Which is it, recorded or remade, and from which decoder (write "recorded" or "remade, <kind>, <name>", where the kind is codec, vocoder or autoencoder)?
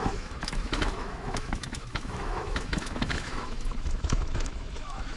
remade, autoencoder, DAC-VAE